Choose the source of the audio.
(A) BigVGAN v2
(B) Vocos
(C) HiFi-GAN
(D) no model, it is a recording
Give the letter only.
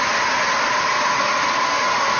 D